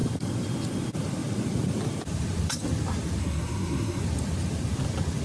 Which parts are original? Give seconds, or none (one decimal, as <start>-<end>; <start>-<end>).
0.0-3.2; 4.0-5.2

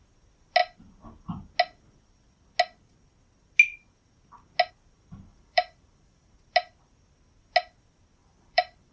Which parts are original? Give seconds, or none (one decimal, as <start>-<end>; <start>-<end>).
0.0-5.3; 6.3-8.2

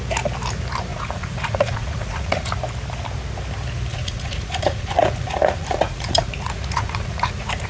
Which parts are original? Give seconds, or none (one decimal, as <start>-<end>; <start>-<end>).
0.0-0.9; 2.5-3.9

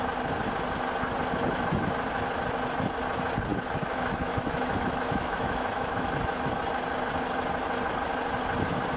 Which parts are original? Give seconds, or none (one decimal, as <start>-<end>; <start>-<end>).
0.0-3.5; 6.6-9.0

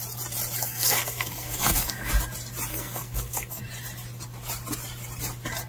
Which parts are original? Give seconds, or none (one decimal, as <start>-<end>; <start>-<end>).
0.0-0.6; 2.1-2.7; 3.6-5.7

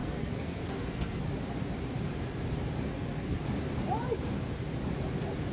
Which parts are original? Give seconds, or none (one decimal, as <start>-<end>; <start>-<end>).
1.2-2.9; 3.4-5.5

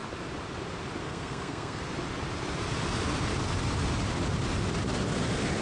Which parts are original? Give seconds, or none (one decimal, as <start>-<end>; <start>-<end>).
0.0-1.0; 1.8-5.6

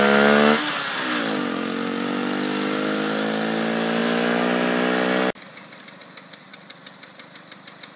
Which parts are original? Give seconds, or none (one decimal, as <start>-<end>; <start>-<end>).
0.0-8.0